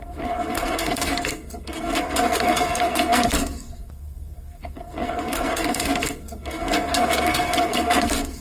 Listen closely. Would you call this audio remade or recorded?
remade